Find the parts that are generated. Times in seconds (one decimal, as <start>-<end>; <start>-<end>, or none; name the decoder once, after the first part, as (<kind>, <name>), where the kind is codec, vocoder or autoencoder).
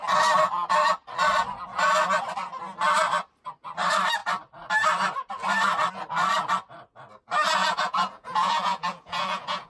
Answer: 7.6-9.7 (vocoder, Vocos)